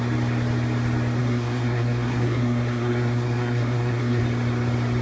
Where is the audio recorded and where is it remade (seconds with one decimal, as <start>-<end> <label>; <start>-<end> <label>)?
0.0-1.2 recorded; 1.2-4.2 remade; 4.2-5.0 recorded